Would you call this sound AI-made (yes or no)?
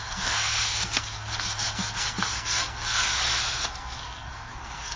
yes